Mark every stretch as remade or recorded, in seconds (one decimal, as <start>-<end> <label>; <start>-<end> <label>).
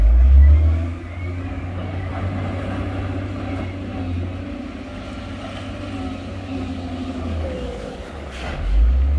0.0-2.1 remade; 2.1-6.3 recorded; 6.3-9.2 remade